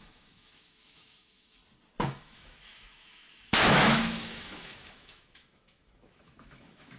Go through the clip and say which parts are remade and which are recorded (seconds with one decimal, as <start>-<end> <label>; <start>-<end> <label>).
0.0-1.6 remade; 1.6-2.1 recorded; 2.1-7.0 remade